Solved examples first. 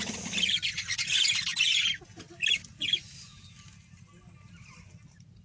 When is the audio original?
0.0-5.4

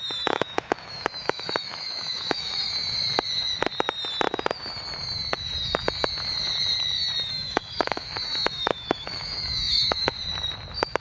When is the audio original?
2.7-7.3; 10.1-11.0

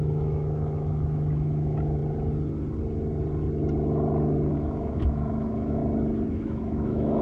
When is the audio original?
2.0-4.5; 5.8-6.3

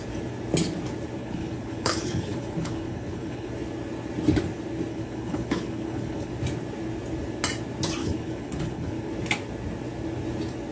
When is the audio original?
0.0-1.2; 3.5-4.9; 6.3-8.0; 9.1-10.7